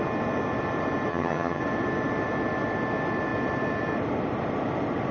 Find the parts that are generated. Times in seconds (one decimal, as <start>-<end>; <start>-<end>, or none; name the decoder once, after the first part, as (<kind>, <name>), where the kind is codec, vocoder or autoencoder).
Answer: 1.1-1.6 (vocoder, HiFi-GAN)

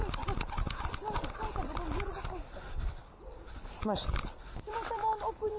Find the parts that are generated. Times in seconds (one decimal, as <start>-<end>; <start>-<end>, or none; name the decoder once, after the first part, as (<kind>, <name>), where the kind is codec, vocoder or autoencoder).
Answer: none